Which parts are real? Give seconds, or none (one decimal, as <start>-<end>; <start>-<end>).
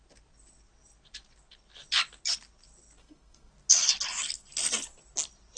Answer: 0.0-3.0; 3.5-5.6